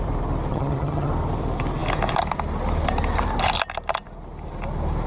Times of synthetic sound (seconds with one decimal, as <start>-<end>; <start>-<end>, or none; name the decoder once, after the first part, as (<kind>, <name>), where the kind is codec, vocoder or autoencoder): 0.5-1.1 (vocoder, HiFi-GAN)